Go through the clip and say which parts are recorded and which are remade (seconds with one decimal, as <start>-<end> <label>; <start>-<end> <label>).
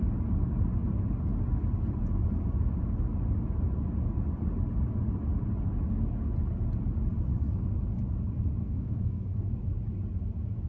0.0-8.6 recorded; 8.6-9.5 remade; 9.5-10.7 recorded